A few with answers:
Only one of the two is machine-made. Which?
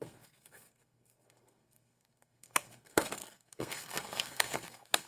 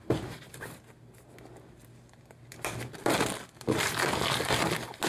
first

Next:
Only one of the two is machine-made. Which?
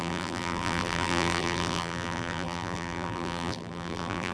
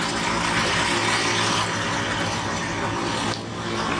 first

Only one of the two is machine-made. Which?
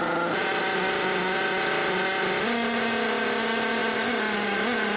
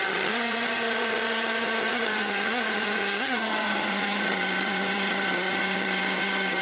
second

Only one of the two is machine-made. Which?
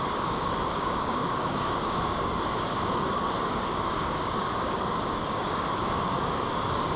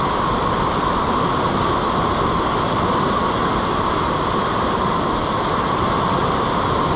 first